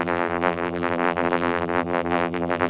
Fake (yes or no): yes